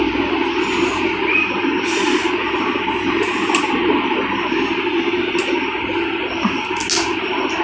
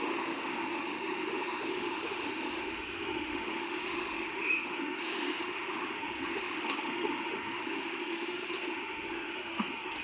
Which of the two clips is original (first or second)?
first